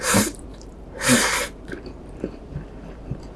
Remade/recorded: remade